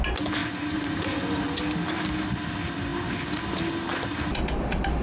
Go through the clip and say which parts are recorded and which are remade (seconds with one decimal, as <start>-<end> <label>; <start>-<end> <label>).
0.0-5.0 recorded